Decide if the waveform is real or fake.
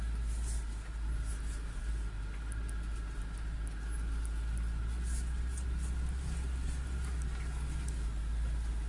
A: real